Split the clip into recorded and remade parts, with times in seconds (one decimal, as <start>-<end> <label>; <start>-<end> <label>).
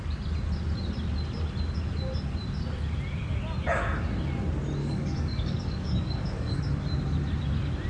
0.0-4.8 recorded; 4.8-6.6 remade; 6.6-7.9 recorded